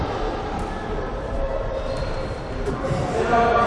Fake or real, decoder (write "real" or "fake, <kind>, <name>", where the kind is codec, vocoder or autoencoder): real